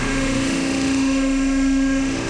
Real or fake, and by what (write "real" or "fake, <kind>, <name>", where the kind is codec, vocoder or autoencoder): fake, autoencoder, DAC-VAE